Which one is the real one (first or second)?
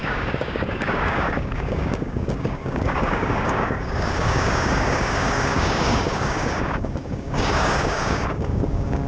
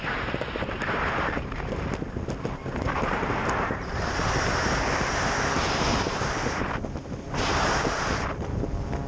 second